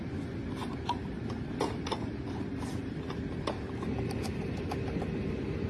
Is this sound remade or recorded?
recorded